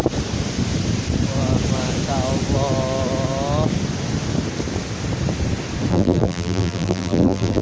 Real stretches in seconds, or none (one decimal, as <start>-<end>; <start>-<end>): 0.0-5.9